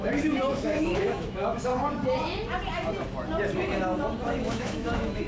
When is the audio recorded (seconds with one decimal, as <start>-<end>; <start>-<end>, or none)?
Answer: 1.7-4.2